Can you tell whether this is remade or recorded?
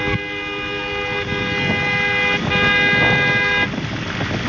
recorded